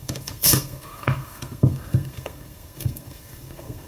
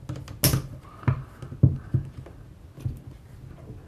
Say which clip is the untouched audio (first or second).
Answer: second